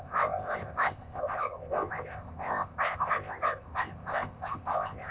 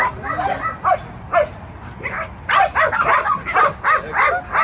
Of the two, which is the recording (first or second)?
second